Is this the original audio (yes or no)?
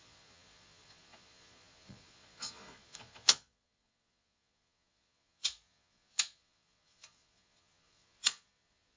no